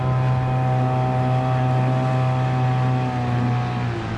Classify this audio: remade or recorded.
recorded